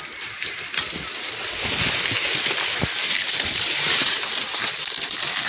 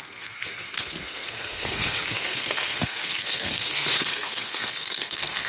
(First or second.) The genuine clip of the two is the first